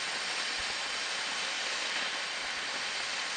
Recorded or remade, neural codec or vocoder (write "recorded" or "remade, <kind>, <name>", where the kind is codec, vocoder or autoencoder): recorded